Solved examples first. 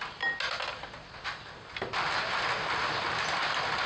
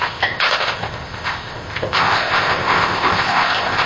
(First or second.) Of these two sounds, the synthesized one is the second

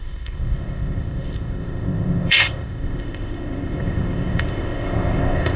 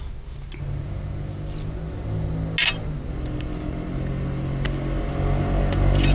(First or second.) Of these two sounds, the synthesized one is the first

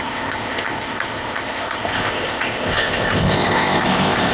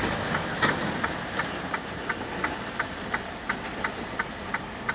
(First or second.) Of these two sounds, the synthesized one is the first